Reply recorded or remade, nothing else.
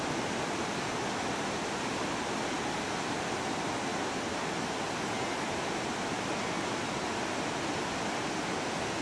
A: recorded